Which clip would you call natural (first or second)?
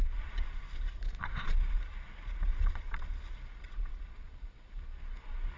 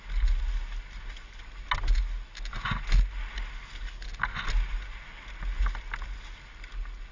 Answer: second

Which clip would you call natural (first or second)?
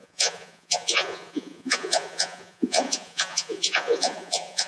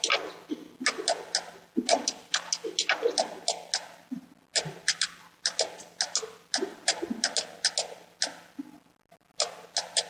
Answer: second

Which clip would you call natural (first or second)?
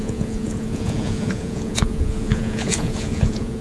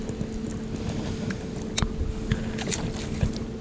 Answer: second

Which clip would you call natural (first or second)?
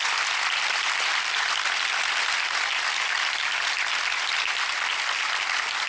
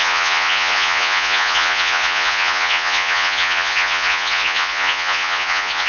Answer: first